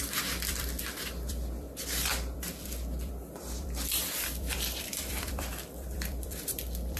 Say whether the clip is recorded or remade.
remade